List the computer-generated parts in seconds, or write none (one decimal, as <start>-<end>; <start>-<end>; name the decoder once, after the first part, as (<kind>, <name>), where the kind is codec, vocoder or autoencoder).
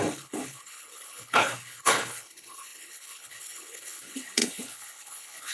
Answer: 0.0-5.5 (codec, HILCodec)